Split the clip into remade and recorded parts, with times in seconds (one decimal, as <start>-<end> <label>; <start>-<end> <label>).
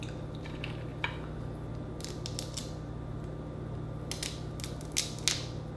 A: 0.0-5.8 recorded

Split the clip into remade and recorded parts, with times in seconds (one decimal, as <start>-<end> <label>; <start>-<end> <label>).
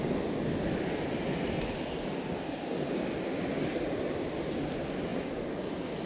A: 0.0-6.1 recorded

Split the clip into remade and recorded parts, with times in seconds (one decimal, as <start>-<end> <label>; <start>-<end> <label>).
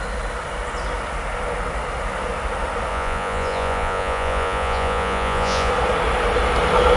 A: 0.0-2.9 recorded; 2.9-5.7 remade; 5.7-7.0 recorded